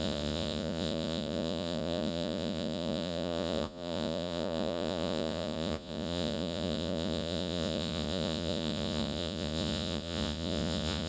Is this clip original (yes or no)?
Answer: no